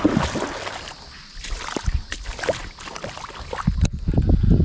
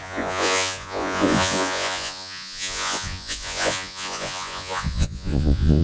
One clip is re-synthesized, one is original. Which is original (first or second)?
first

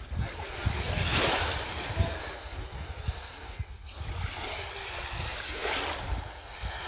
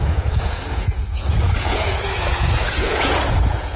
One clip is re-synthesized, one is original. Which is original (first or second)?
first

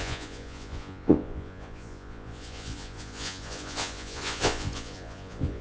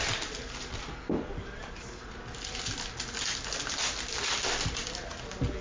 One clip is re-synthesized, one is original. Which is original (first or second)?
second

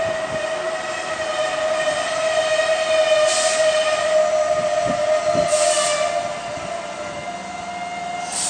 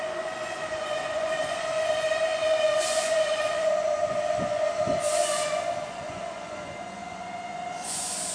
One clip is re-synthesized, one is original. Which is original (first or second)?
first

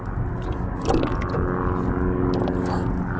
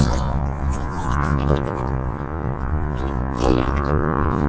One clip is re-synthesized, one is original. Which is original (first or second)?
first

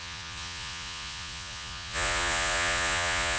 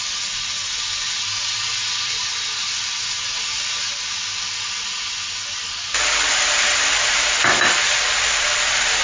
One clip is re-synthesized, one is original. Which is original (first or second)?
second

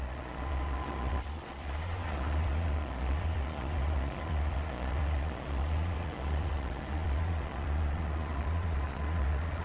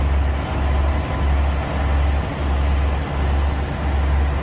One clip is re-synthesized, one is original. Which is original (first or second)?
second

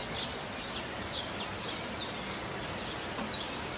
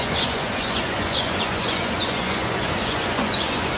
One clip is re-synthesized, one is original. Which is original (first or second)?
first